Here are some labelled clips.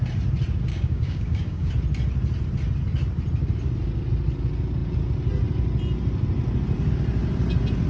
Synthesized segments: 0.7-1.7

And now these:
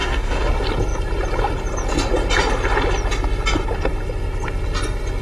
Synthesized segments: 0.0-0.5

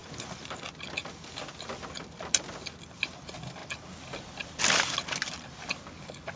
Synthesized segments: none

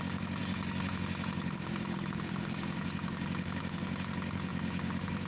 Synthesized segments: 0.0-5.3

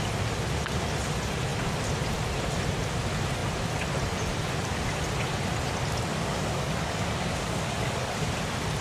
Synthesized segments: 6.1-8.3

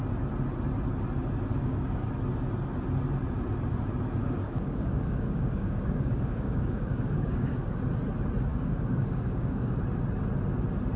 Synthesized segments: 1.6-2.1; 4.2-7.7; 8.5-9.7

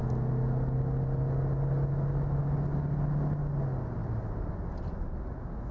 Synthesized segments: none